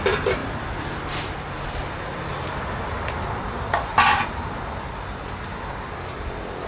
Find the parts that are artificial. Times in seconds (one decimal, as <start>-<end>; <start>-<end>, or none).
none